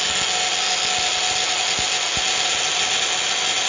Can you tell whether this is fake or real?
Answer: real